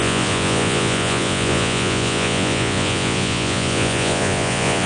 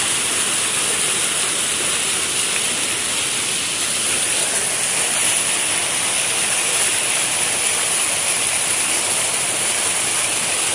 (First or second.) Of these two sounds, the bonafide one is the second